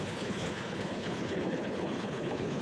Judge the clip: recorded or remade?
remade